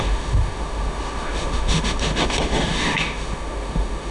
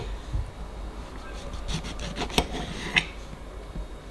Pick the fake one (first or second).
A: first